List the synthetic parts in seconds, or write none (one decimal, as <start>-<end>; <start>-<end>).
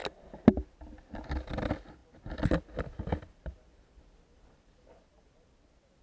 2.0-5.6